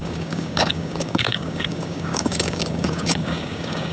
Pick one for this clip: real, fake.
fake